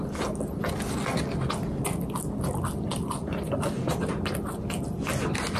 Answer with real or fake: real